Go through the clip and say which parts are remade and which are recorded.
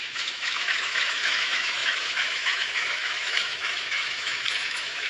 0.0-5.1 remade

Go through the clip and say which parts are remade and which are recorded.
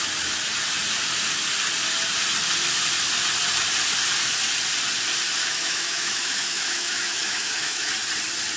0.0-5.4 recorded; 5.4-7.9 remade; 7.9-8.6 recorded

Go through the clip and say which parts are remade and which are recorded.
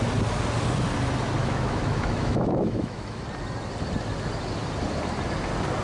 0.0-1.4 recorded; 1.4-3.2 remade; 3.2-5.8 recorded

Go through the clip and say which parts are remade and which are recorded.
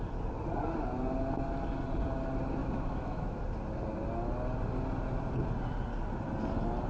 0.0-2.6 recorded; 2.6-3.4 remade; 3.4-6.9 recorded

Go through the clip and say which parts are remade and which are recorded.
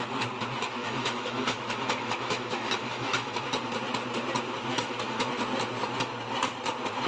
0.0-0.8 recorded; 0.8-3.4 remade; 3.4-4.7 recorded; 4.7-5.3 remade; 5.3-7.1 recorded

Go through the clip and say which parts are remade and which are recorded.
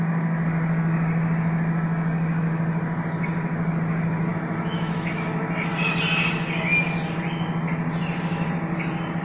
0.0-4.3 recorded; 4.3-5.4 remade; 5.4-9.2 recorded